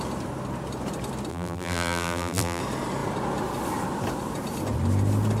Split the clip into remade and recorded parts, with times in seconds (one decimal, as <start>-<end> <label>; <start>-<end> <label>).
0.0-1.3 recorded; 1.3-2.6 remade; 2.6-5.4 recorded